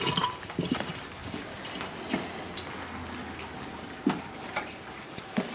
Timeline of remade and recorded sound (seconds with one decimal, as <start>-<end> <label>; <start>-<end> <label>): 0.0-1.2 remade; 1.2-4.5 recorded; 4.5-5.5 remade